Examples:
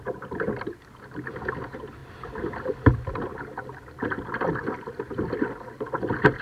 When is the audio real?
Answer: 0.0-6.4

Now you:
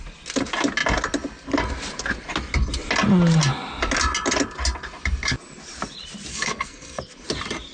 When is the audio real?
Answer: 0.0-6.3; 7.0-7.7

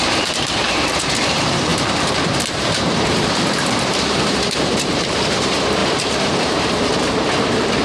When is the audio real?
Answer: none

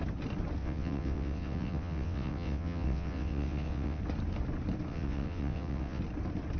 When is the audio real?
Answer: 0.0-0.6; 4.0-4.9; 6.0-6.6

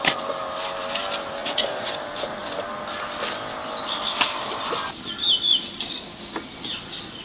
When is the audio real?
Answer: 0.0-1.4; 1.9-7.2

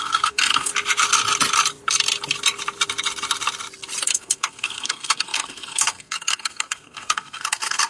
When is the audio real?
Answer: 0.7-4.0